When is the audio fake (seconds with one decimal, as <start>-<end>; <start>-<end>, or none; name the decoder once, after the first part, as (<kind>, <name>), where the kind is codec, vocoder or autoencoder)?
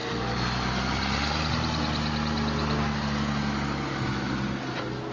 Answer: none